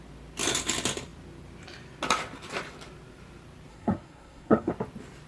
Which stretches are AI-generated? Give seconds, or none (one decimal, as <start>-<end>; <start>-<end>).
3.7-4.7